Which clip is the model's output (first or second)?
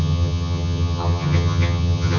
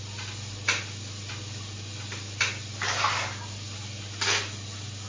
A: first